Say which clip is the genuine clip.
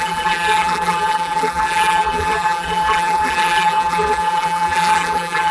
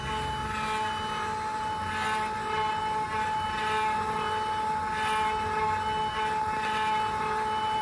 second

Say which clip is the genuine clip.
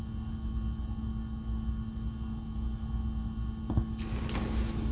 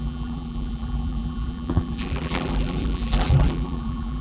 first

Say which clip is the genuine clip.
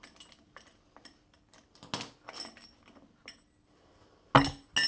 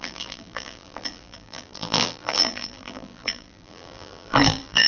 first